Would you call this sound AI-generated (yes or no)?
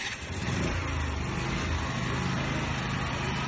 no